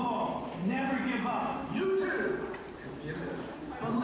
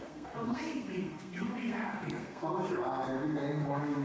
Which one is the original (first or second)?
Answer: first